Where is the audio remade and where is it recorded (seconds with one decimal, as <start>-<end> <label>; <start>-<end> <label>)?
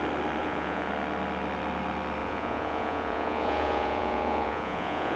0.0-0.4 recorded; 0.4-0.9 remade; 0.9-2.2 recorded; 2.2-5.2 remade